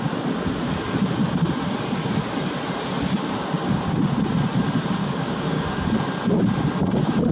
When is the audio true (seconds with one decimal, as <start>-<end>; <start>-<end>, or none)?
0.0-5.0; 5.8-7.3